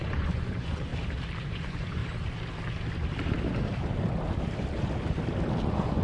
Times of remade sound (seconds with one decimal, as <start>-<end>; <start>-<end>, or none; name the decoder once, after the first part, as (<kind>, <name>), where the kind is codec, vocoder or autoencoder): 0.0-0.9 (vocoder, Vocos); 1.4-2.0; 5.6-6.0